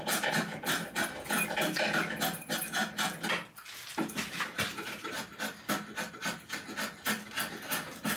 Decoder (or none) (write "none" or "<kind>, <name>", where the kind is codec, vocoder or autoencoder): none